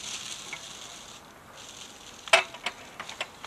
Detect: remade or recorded recorded